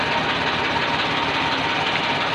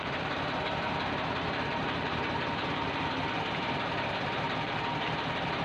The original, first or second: first